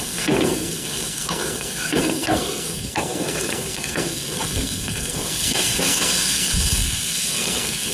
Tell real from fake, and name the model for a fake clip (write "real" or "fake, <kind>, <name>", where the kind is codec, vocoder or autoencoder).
fake, codec, SNAC